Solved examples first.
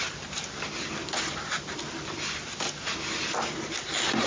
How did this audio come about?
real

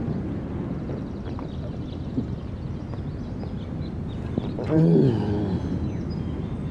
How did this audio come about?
real